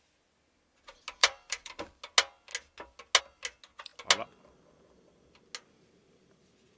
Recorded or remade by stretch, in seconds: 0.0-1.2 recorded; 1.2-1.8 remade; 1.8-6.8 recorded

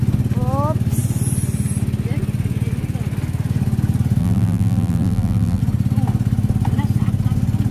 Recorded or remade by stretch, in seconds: 0.0-4.2 recorded; 4.2-5.6 remade; 5.6-7.7 recorded

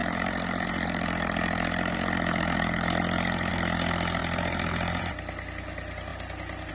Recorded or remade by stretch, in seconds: 0.0-3.5 remade; 3.5-4.2 recorded; 4.2-5.0 remade; 5.0-6.7 recorded

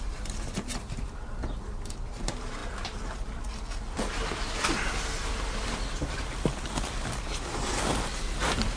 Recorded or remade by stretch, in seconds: 0.0-2.6 remade; 2.6-3.8 recorded; 3.8-8.8 remade

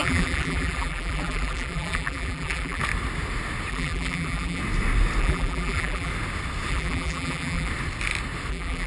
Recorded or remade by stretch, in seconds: 0.0-2.8 remade; 2.8-3.7 recorded; 3.7-4.6 remade; 4.6-5.2 recorded; 5.2-6.1 remade; 6.1-6.7 recorded; 6.7-7.7 remade; 7.7-8.5 recorded; 8.5-8.9 remade

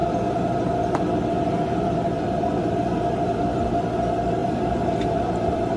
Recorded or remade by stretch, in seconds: 0.0-3.4 remade; 3.4-4.4 recorded; 4.4-5.8 remade